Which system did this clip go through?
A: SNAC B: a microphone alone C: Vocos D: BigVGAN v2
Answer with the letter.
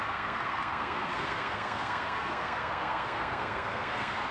A